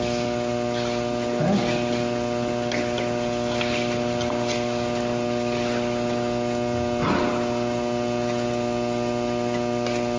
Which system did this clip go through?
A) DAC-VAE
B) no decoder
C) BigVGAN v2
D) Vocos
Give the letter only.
B